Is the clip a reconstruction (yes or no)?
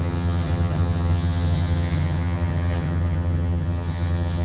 yes